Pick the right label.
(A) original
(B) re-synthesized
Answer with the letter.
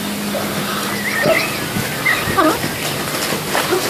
A